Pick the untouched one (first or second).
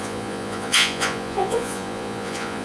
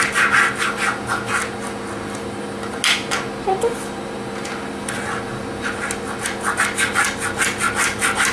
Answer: second